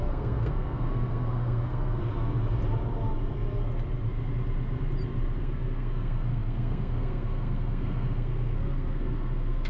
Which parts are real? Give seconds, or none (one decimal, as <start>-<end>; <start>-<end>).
2.0-5.4